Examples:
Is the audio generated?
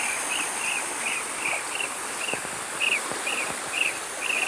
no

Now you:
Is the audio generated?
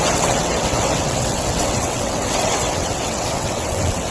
yes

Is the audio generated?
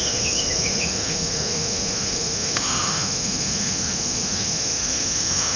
yes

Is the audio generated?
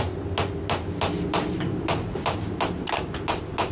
no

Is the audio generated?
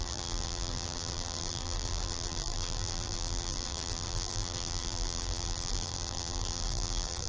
yes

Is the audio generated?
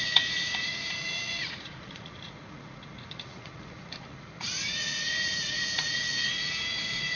yes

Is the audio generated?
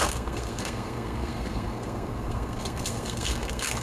yes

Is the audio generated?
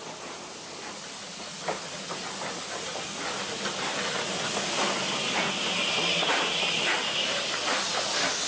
no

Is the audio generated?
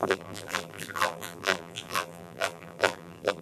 yes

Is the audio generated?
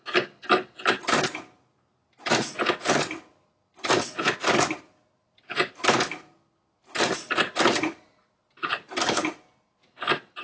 no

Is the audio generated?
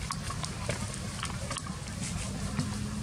no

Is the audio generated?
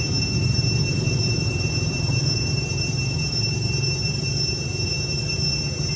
no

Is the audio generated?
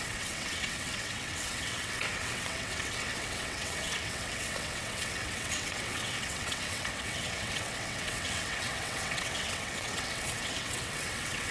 yes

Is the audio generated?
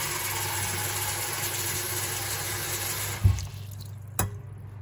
no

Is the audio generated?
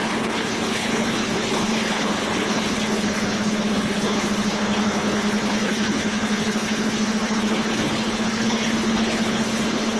yes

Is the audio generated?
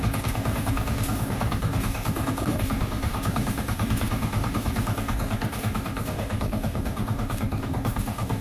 yes